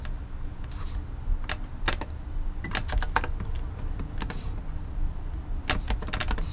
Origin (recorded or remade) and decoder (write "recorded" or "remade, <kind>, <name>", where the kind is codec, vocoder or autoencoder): recorded